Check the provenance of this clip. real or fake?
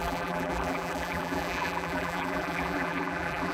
fake